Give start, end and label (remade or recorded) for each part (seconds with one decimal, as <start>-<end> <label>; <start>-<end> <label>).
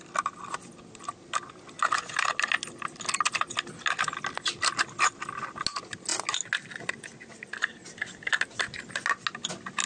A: 0.0-9.9 recorded